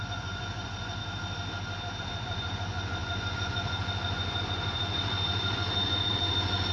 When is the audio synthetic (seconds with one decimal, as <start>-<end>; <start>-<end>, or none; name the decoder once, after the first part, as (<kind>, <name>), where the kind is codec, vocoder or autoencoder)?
0.0-1.0 (vocoder, Vocos); 2.0-6.7